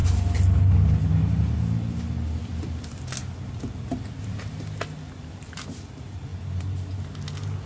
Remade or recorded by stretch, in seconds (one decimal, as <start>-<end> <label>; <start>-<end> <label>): 0.0-7.7 recorded